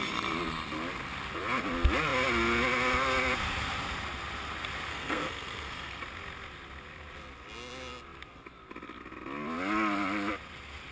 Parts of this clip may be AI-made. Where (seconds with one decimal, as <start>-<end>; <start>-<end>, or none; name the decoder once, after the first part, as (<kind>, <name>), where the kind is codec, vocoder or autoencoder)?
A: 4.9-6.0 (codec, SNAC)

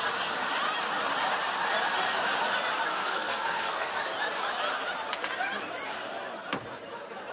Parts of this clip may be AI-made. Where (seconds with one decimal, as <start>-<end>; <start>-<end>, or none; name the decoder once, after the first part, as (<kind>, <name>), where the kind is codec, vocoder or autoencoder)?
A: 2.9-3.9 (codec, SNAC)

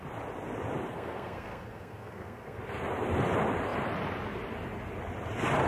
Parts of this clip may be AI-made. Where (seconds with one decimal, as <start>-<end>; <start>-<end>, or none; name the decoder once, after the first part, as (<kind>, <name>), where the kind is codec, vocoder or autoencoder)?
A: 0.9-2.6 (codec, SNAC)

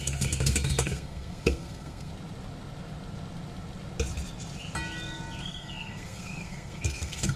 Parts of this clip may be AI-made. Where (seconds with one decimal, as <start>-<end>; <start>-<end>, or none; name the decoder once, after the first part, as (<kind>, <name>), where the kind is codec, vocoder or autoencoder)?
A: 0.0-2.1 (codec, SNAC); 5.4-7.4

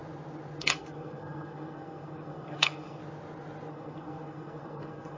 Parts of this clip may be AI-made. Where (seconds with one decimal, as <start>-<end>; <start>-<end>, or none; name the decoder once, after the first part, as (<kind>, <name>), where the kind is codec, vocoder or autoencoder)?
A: 0.6-3.0 (codec, SNAC); 3.7-5.2

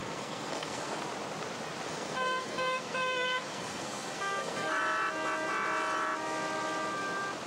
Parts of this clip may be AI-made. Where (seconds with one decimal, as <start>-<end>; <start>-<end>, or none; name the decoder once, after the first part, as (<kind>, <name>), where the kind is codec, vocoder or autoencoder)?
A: 0.0-1.0 (codec, SNAC); 1.9-4.8

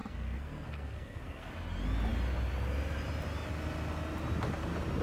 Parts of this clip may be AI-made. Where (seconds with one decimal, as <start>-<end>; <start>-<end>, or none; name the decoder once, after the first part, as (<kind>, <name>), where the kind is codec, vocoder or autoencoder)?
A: 0.0-1.5 (codec, SNAC)